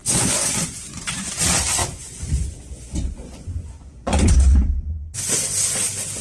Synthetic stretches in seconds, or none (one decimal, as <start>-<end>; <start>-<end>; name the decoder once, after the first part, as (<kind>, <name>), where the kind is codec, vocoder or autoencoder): 0.0-1.3 (vocoder, Vocos); 1.8-4.3